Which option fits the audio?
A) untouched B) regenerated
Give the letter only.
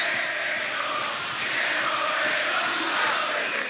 A